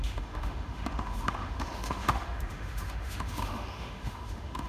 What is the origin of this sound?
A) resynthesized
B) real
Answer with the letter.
A